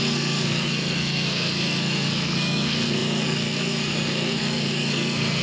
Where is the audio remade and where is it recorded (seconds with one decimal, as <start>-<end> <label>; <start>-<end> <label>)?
0.0-5.4 remade